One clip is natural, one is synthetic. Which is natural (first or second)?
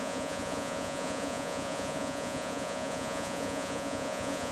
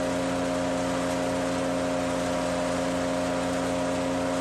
second